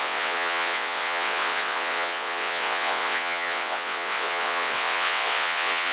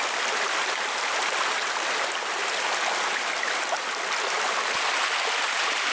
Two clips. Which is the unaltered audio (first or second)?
second